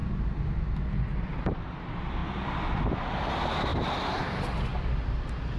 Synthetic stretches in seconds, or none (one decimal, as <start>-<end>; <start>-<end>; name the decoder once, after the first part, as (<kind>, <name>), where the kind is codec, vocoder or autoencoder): 3.7-4.2 (vocoder, BigVGAN v2)